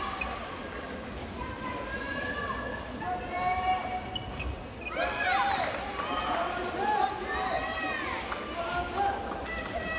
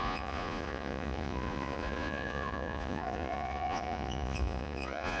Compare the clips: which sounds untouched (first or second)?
first